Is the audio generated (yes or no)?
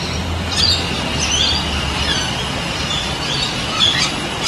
no